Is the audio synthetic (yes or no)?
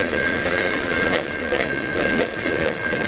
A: yes